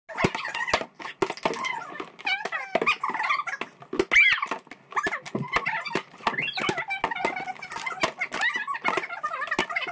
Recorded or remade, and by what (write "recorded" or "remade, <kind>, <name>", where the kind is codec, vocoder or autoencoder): recorded